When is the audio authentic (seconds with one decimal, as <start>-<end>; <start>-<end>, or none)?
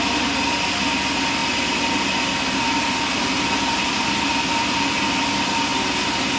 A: 0.0-6.4